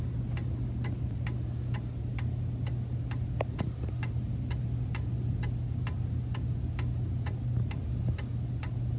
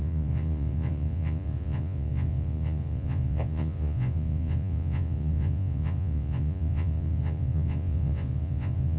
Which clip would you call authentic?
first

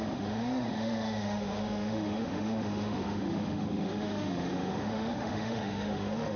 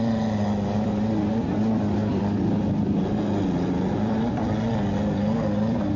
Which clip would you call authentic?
second